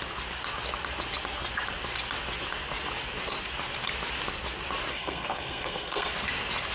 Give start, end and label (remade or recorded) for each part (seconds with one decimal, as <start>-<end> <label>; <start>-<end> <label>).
0.0-4.9 recorded; 4.9-6.1 remade; 6.1-6.7 recorded